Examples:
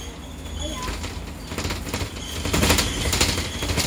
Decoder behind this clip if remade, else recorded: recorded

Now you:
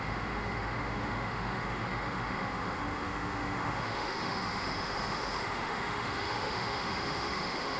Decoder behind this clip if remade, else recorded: remade, autoencoder, DAC-VAE